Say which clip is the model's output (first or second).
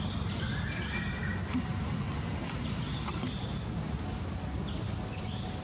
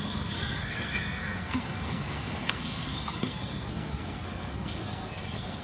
second